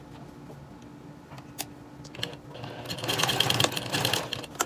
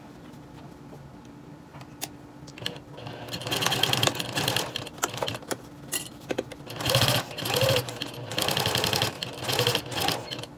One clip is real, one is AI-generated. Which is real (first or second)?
first